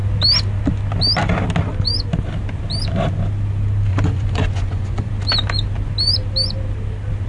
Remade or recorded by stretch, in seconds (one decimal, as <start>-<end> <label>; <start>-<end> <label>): 0.0-3.9 recorded; 3.9-5.1 remade; 5.1-7.3 recorded